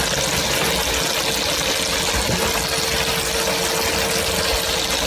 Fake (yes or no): no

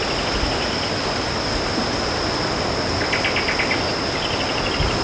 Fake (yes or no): no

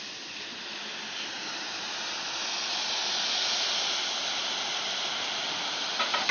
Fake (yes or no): no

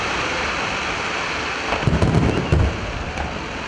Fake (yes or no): no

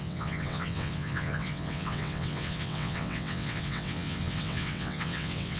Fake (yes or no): yes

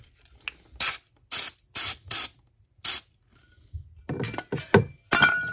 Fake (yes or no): no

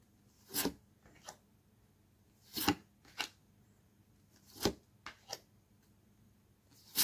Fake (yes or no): no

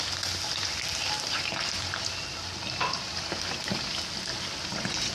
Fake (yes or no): no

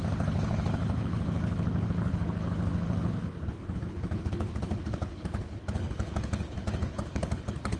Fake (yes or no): yes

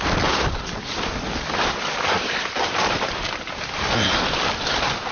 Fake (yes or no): yes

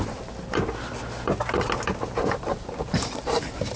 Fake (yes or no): no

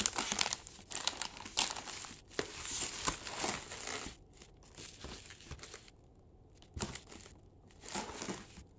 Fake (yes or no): no